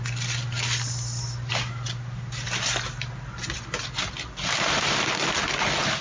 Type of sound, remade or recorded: recorded